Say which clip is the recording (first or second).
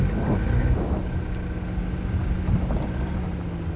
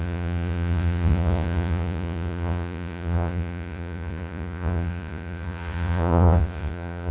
first